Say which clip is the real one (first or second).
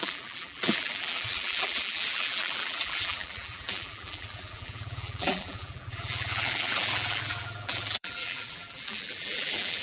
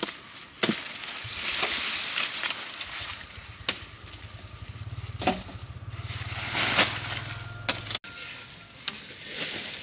second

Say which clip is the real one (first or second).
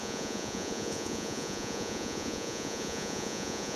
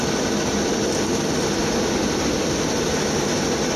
second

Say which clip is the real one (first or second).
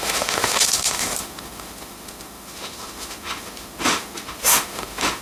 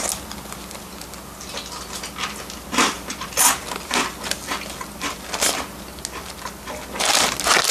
second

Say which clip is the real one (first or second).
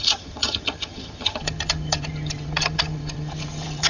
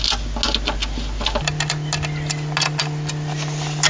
second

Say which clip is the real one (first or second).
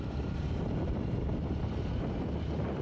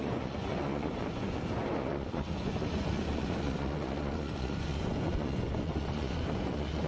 first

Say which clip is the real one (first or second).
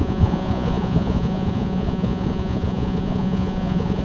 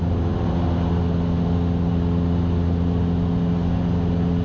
second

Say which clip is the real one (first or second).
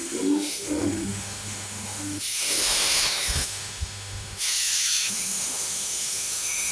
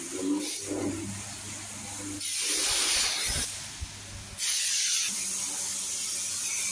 second